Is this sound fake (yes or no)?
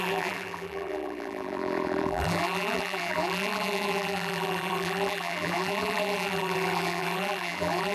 yes